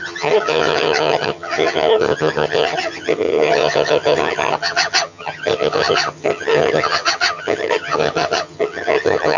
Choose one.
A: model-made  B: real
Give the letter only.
A